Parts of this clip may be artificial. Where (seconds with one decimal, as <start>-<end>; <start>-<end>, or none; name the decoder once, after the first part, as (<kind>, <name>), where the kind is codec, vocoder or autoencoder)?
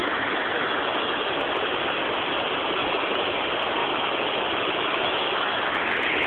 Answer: 0.0-1.3 (autoencoder, DAC-VAE); 2.8-3.4; 3.8-5.6